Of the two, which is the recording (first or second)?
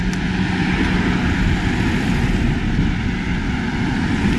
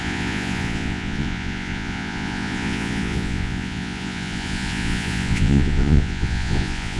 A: first